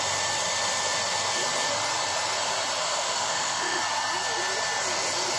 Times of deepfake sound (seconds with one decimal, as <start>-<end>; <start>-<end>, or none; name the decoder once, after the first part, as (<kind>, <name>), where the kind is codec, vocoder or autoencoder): 2.8-3.8 (autoencoder, DAC-VAE)